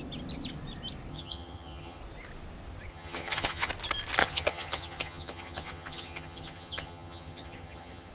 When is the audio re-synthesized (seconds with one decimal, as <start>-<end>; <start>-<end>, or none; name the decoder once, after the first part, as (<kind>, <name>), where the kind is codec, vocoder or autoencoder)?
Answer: 1.1-2.0 (vocoder, HiFi-GAN); 2.9-3.7; 4.2-8.1